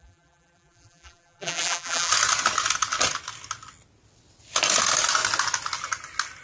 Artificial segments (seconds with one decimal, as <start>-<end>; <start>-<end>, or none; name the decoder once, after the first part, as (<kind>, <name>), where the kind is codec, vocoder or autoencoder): 0.0-2.1 (vocoder, BigVGAN v2)